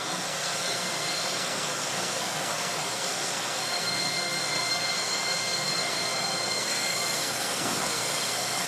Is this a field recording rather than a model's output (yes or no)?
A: no